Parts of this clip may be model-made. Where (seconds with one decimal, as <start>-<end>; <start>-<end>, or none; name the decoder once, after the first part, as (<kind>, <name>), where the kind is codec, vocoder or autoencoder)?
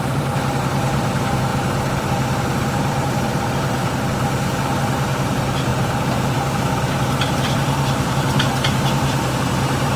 0.0-1.5 (vocoder, BigVGAN v2); 2.1-3.8; 4.9-10.0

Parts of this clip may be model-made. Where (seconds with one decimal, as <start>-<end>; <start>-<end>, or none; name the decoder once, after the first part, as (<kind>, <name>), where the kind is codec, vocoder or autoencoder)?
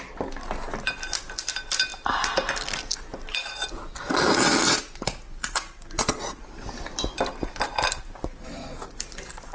none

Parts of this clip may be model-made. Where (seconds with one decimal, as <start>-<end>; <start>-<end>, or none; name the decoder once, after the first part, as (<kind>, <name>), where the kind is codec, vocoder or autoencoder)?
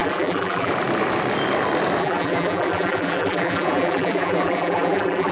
0.0-0.7 (vocoder, BigVGAN v2); 2.0-5.3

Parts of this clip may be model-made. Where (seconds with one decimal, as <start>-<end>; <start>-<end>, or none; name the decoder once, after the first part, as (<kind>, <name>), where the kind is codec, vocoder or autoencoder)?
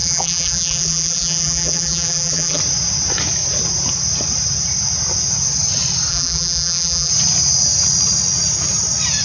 0.0-2.6 (vocoder, BigVGAN v2); 6.1-7.1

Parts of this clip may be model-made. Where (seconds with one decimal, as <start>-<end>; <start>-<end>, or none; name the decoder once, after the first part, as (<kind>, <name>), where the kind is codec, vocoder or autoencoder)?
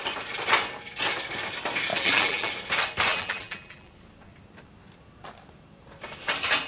1.9-2.5 (vocoder, BigVGAN v2); 3.1-3.9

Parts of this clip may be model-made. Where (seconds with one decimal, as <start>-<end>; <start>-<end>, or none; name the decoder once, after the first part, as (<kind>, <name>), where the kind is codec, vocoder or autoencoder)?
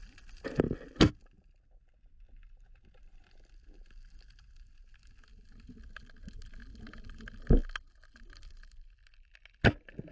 none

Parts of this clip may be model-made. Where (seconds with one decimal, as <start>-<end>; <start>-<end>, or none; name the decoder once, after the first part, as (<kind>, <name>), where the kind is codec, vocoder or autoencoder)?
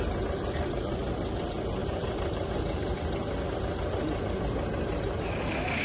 1.8-2.8 (vocoder, BigVGAN v2)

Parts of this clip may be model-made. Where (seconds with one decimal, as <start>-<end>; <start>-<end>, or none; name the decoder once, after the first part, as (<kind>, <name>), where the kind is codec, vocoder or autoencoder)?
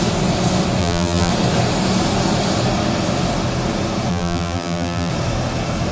0.8-1.3 (vocoder, BigVGAN v2); 4.1-5.1